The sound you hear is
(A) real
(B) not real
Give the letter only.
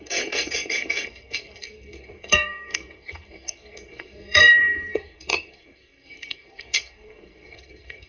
B